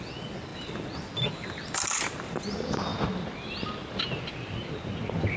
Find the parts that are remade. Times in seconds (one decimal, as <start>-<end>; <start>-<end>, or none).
none